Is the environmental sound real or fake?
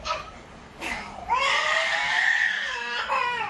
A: fake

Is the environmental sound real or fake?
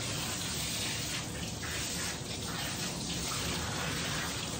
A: real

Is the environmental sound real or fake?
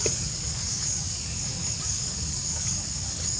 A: fake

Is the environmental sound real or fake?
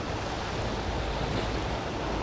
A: real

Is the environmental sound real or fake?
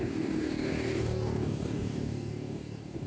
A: fake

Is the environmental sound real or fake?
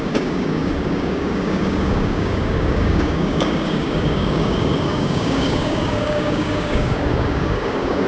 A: fake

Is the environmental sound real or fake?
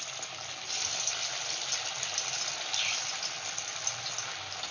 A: real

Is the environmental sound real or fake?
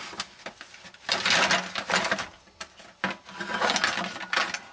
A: real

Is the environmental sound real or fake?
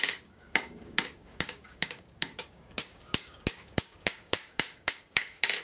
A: fake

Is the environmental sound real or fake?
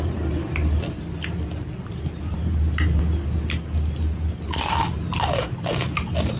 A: real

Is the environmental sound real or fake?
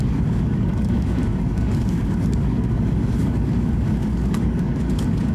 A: fake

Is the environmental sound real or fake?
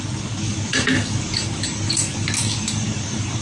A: fake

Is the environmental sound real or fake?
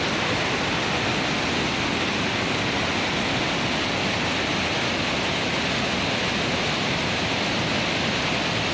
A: real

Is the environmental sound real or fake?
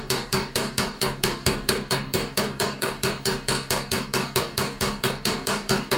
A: fake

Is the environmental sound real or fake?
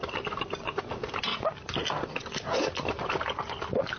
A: real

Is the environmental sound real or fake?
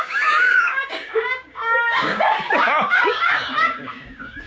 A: fake